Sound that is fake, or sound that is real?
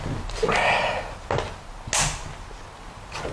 real